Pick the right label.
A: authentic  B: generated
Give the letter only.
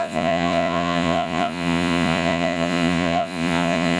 B